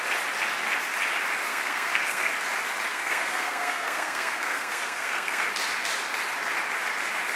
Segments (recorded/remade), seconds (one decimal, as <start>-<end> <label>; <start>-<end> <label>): 0.0-1.5 recorded; 1.5-2.3 remade; 2.3-2.9 recorded; 2.9-5.5 remade; 5.5-7.4 recorded